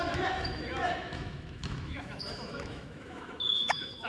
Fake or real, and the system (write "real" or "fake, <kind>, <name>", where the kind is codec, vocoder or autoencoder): fake, autoencoder, DAC-VAE